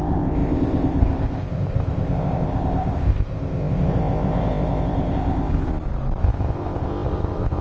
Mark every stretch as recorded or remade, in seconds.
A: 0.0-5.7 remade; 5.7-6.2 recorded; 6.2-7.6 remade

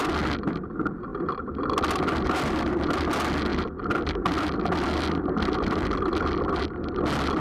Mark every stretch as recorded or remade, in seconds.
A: 0.0-1.1 recorded; 1.1-2.7 remade; 2.7-3.5 recorded; 3.5-6.6 remade; 6.6-7.4 recorded